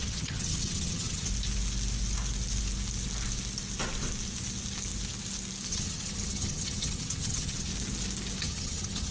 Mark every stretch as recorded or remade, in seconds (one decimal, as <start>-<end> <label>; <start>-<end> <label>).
0.0-1.3 remade; 1.3-5.7 recorded; 5.7-7.7 remade; 7.7-8.4 recorded; 8.4-9.1 remade